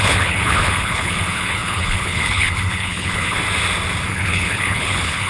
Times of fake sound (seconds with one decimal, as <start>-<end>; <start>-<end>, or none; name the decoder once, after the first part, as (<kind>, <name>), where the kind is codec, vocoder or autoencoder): 0.0-3.4 (codec, HILCodec); 4.1-5.3